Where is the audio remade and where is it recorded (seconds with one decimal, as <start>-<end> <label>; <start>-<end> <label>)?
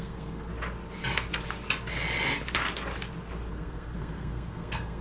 0.0-0.5 remade; 0.5-3.5 recorded; 3.5-5.0 remade